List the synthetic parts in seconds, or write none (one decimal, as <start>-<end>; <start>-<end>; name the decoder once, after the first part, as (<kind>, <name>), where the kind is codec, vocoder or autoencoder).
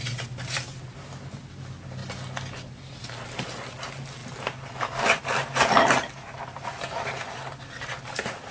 none